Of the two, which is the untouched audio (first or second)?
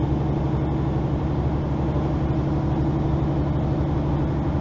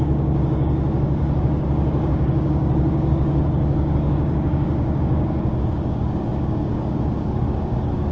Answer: first